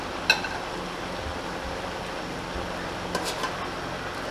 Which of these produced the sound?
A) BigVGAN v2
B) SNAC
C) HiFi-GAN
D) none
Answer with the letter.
D